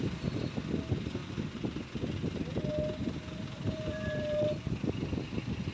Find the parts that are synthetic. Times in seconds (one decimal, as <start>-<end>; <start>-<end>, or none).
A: 1.2-1.8; 3.0-4.6